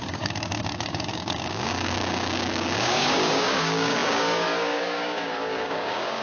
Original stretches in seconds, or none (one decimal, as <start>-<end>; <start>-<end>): none